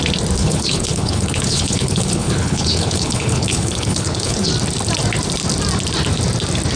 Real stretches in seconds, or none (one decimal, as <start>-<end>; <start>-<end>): 0.0-0.4; 4.5-6.8